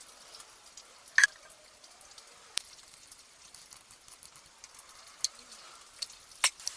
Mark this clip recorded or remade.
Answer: recorded